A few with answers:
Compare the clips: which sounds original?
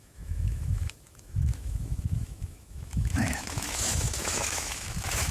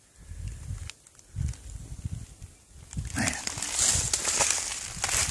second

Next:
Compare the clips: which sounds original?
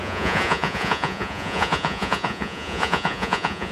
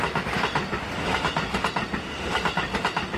second